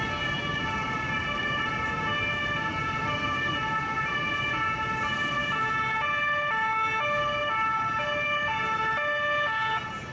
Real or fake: real